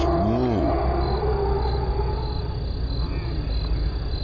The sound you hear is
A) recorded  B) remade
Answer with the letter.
A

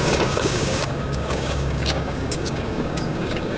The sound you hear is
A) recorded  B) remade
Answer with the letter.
B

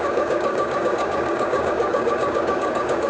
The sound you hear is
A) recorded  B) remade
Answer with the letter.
B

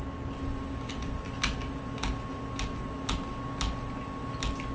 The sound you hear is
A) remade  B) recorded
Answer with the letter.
B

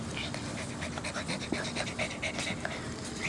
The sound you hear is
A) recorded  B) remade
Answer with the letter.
A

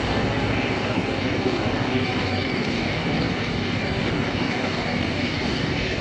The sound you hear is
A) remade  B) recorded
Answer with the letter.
A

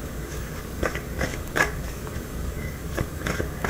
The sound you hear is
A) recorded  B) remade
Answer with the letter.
B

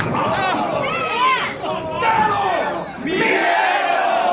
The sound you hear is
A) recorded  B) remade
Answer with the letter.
A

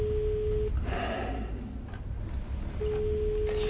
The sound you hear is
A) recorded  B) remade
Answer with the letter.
A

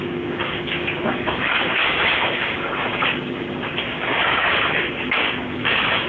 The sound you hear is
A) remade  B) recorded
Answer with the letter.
A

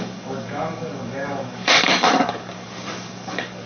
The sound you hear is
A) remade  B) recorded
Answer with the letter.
A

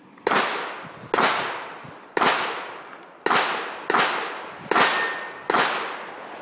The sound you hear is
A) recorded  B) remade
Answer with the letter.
A